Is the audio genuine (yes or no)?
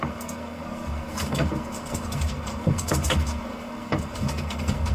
no